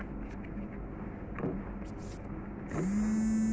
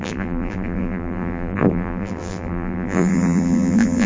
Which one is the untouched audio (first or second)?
first